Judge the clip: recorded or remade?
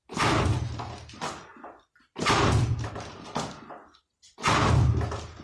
recorded